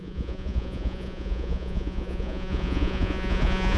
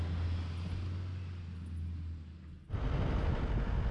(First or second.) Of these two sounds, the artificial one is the first